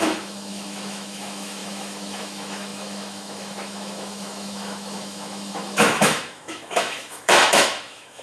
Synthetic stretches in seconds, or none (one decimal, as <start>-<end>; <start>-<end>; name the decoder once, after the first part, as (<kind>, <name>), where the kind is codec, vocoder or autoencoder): 0.0-8.2 (autoencoder, DAC-VAE)